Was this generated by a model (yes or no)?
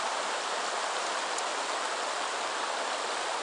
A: no